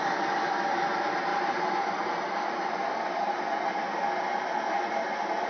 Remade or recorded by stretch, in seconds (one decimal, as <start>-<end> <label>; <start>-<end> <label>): 0.0-1.3 recorded; 1.3-2.0 remade; 2.0-5.5 recorded